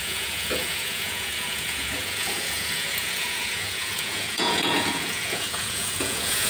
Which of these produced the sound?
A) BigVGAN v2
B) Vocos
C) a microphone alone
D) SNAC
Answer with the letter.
B